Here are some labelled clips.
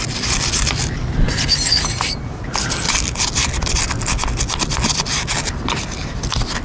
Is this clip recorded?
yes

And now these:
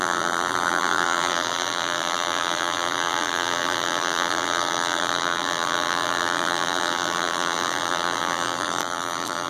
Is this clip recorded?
no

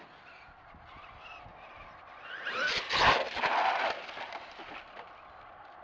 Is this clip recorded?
yes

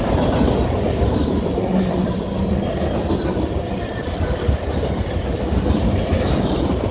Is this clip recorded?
no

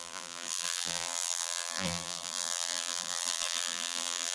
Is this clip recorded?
no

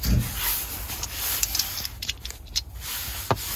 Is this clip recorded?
yes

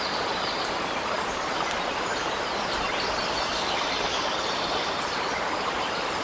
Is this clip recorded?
no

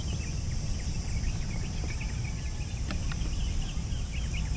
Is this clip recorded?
yes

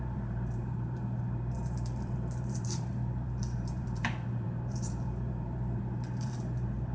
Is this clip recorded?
no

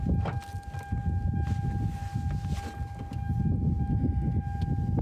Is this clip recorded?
yes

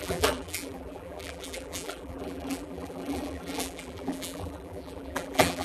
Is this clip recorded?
no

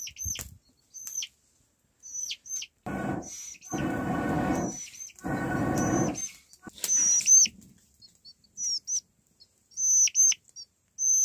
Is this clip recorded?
yes